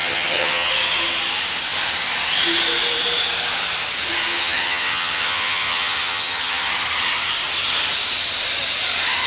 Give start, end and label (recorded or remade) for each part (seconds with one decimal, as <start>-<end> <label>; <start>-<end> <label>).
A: 0.0-0.7 remade; 0.7-4.3 recorded; 4.3-6.7 remade; 6.7-9.3 recorded